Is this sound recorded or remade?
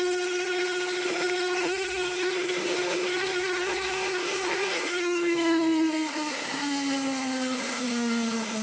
remade